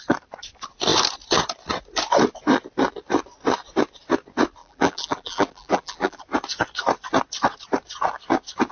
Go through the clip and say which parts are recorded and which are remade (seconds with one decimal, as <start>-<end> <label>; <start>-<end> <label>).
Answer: 0.0-4.6 recorded; 4.6-6.2 remade; 6.2-8.7 recorded